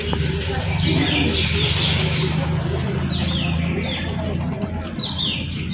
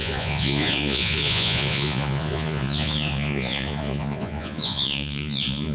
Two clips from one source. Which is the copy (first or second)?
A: second